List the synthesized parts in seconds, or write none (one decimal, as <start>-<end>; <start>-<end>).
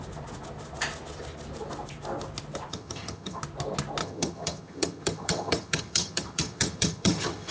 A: 2.7-3.4; 4.0-7.5